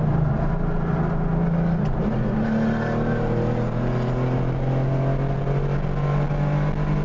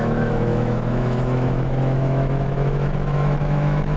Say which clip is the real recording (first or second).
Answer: first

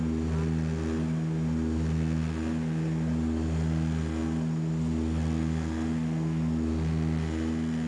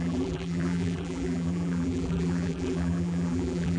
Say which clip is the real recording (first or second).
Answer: first